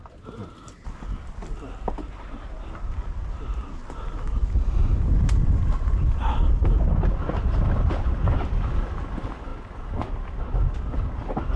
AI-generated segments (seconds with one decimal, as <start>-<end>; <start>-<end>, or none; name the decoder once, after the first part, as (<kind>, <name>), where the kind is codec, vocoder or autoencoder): none